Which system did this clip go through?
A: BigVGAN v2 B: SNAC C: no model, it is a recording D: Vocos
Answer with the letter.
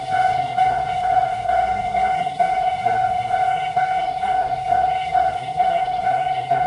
B